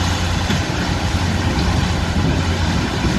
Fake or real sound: real